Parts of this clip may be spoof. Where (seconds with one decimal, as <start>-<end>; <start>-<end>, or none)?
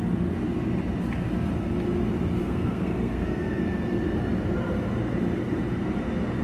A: 2.4-3.6